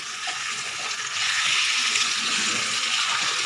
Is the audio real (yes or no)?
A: no